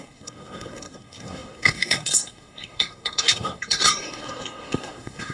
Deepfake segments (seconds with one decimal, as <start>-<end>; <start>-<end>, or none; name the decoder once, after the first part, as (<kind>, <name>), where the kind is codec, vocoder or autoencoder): 0.0-5.3 (codec, SNAC)